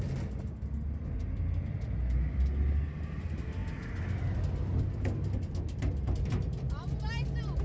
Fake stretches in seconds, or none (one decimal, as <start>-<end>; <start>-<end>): none